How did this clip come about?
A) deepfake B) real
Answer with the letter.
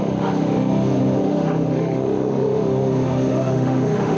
A